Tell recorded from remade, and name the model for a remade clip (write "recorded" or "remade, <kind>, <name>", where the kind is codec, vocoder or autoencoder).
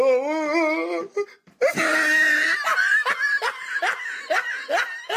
recorded